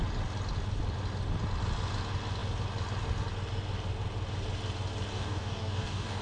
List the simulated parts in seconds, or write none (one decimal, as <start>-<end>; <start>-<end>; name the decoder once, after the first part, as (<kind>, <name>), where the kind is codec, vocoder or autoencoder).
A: 5.1-6.2 (codec, DAC)